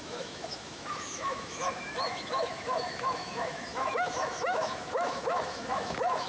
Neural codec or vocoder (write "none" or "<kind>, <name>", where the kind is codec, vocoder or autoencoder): autoencoder, DAC-VAE